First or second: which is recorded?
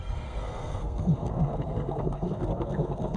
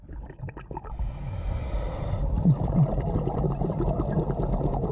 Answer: second